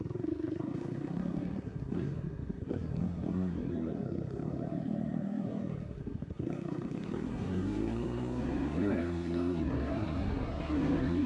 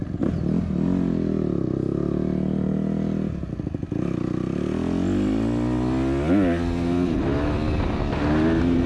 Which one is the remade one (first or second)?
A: first